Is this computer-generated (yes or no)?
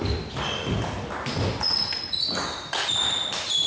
no